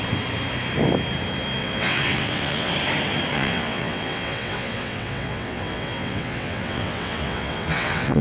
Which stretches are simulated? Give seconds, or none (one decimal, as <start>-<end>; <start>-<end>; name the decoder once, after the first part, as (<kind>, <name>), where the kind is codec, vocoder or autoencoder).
1.6-2.7 (vocoder, WaveNeXt); 3.3-8.2